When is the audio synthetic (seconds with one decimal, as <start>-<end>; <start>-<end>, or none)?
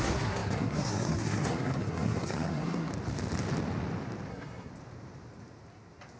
0.0-2.9; 4.3-4.7